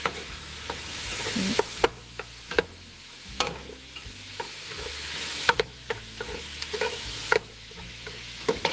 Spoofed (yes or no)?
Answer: yes